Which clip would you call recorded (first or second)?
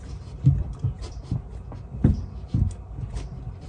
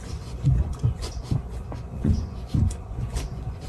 first